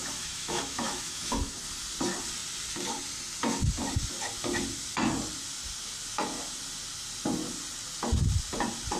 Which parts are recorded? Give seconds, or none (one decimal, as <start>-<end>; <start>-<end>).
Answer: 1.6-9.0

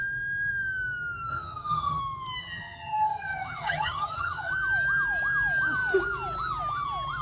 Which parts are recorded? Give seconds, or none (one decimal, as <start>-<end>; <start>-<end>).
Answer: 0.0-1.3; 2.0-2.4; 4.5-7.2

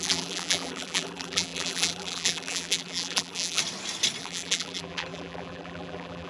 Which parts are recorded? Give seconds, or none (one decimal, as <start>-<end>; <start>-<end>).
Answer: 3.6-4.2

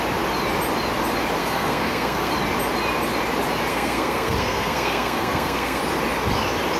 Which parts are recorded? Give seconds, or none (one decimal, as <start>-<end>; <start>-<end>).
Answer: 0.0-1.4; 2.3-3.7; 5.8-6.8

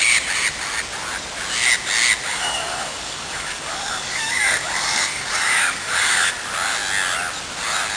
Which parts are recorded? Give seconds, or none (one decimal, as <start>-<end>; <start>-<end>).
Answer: 0.0-2.3; 6.3-8.0